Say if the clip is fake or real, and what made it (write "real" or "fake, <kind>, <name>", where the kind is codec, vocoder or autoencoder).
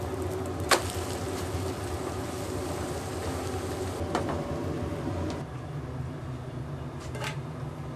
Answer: real